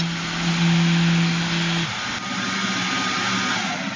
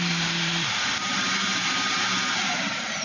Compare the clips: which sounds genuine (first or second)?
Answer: first